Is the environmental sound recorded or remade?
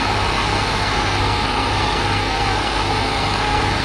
remade